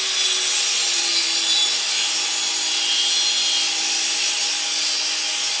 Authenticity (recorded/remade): recorded